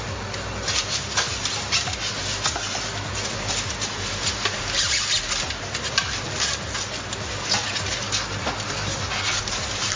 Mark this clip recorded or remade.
recorded